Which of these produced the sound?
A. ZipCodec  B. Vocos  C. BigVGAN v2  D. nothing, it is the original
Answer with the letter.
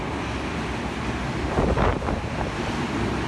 D